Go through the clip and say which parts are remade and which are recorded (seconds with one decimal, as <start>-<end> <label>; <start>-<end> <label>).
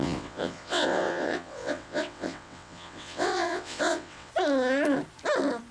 0.0-4.3 remade; 4.3-5.7 recorded